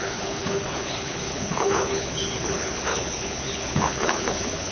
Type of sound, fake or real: fake